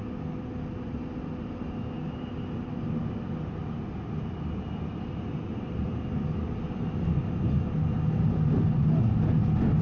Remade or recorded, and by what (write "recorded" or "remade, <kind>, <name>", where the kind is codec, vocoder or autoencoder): recorded